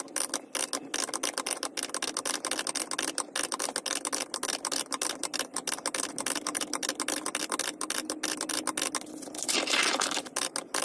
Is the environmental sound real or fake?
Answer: real